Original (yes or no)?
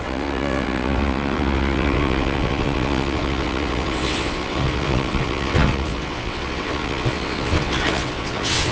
no